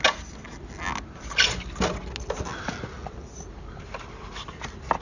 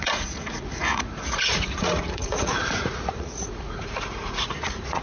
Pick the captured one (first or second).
first